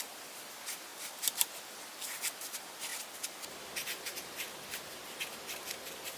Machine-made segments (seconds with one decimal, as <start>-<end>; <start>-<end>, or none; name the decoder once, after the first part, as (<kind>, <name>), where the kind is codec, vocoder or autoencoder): 0.0-6.2 (vocoder, BigVGAN v2)